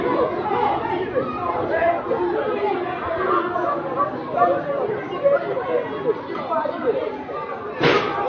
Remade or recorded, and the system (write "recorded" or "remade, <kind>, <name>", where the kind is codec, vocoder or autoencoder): recorded